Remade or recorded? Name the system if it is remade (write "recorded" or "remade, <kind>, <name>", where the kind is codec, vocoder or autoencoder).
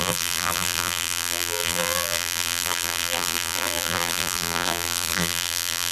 remade, vocoder, BigVGAN v2